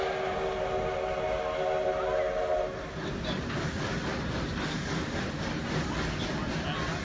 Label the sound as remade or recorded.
recorded